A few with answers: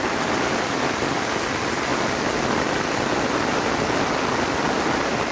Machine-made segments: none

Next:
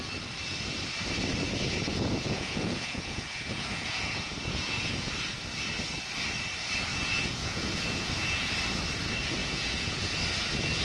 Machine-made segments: 1.9-5.1 (vocoder, Vocos); 6.9-8.5; 9.4-10.0

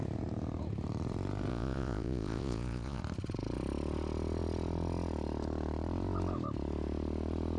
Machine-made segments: 1.5-3.0 (vocoder, Vocos)

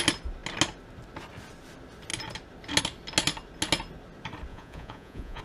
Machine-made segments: 4.5-5.4 (vocoder, Vocos)

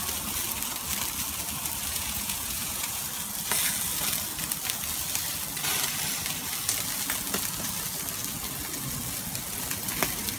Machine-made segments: 1.9-3.0 (vocoder, Vocos)